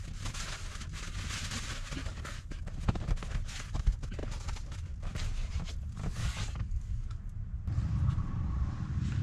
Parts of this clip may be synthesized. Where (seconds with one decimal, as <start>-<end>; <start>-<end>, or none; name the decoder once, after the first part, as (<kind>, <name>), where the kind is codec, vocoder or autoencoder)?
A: 2.0-2.6 (codec, DAC); 6.0-7.2